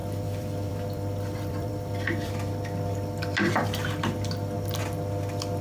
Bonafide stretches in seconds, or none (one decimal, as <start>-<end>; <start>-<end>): 2.3-5.6

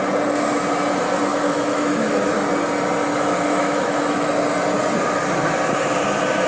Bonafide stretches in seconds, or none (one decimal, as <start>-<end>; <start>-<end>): 0.0-1.3; 2.3-3.1; 4.3-6.5

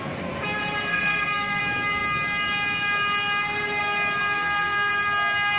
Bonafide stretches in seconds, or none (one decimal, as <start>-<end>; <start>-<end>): 0.0-0.9; 1.6-4.2; 4.9-5.6

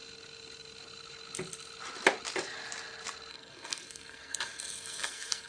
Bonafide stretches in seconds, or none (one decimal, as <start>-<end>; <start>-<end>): 0.0-3.3

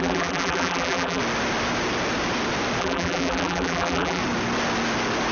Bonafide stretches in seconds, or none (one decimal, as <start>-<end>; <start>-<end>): 1.2-2.8; 4.2-5.3

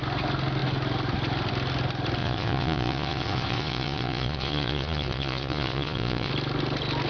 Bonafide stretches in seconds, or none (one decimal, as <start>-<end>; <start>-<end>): 0.0-2.2; 6.3-7.1

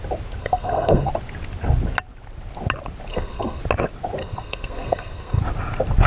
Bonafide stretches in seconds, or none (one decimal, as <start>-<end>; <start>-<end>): 0.0-0.4; 1.1-3.1; 3.6-4.2; 5.4-6.1

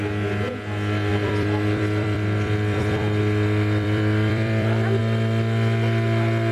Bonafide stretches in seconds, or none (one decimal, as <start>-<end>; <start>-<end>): 0.0-1.1; 5.0-6.5